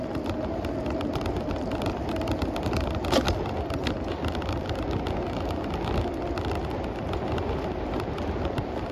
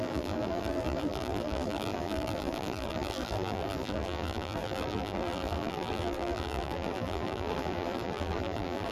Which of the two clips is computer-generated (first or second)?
second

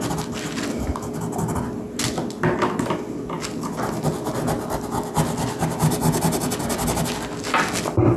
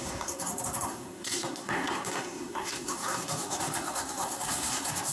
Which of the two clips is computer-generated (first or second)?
second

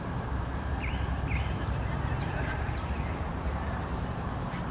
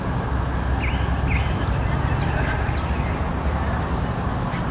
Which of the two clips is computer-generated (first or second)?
first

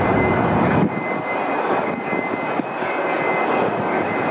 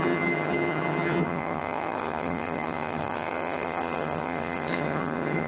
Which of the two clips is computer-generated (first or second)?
second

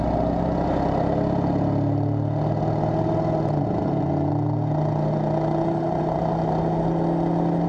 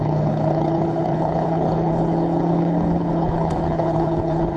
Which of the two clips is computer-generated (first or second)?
second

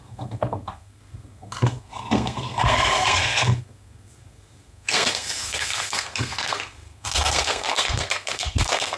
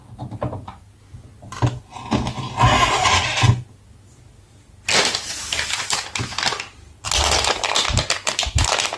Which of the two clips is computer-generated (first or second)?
first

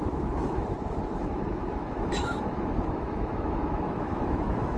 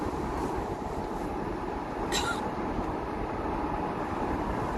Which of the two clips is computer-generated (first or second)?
first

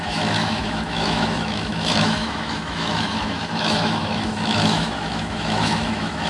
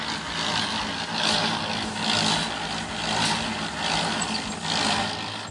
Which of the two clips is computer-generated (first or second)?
first